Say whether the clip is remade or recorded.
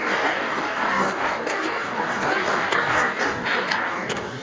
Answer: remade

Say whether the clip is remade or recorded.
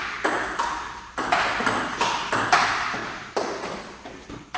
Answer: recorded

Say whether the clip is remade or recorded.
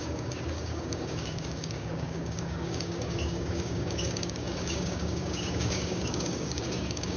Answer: remade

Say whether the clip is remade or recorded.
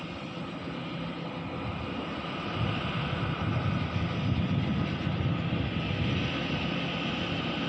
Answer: recorded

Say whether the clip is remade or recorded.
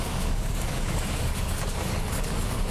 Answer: remade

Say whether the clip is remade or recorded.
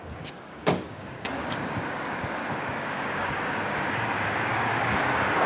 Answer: remade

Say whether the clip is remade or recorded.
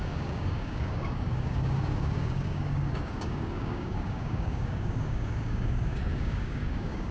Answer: remade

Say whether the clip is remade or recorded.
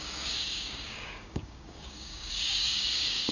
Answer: remade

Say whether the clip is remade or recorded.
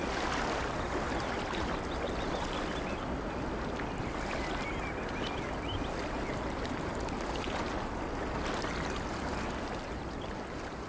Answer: recorded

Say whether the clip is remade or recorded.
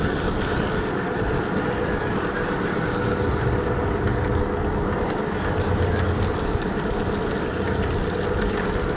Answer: recorded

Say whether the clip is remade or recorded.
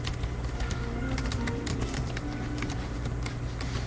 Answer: recorded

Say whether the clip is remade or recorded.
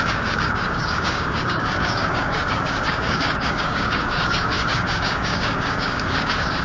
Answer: remade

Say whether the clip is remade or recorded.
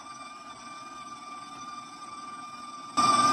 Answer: recorded